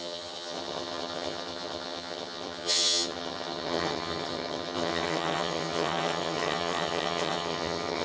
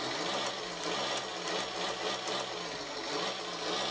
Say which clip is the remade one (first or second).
first